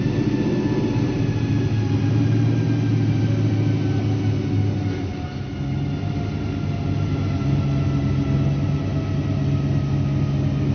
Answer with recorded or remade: recorded